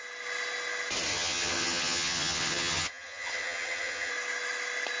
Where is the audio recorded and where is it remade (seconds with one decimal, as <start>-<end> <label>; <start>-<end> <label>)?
0.0-1.1 recorded; 1.1-4.1 remade; 4.1-5.0 recorded